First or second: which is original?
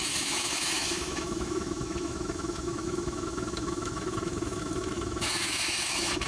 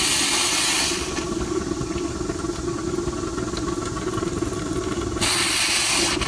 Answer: second